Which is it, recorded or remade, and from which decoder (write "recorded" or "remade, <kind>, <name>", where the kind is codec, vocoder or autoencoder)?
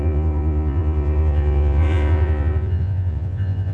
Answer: remade, vocoder, Vocos